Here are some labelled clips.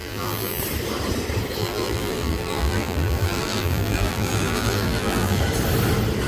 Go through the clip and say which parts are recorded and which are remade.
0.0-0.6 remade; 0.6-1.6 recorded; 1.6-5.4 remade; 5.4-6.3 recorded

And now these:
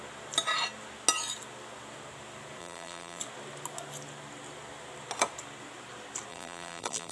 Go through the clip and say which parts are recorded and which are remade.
0.0-2.6 recorded; 2.6-3.2 remade; 3.2-6.3 recorded; 6.3-7.1 remade

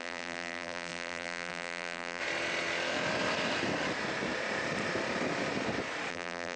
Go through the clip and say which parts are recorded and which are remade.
0.0-2.2 remade; 2.2-6.1 recorded; 6.1-6.6 remade

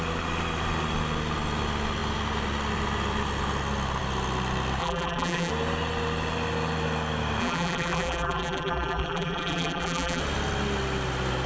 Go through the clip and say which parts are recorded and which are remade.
0.0-4.8 recorded; 4.8-5.5 remade; 5.5-7.4 recorded; 7.4-10.2 remade; 10.2-11.5 recorded

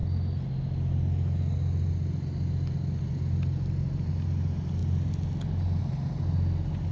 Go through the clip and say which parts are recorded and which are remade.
0.0-6.9 recorded

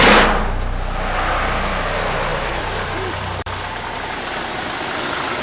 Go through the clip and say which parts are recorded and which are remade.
0.0-2.3 recorded; 2.3-3.8 remade; 3.8-5.4 recorded

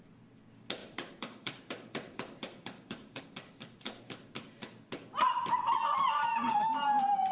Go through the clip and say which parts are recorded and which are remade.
0.0-0.8 recorded; 0.8-3.2 remade; 3.2-7.3 recorded